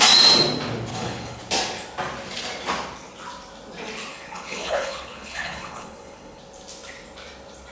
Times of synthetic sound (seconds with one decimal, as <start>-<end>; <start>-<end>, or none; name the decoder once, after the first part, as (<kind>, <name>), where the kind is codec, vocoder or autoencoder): 0.9-1.4 (codec, HILCodec); 4.1-6.4